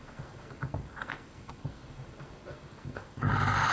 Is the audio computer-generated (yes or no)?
yes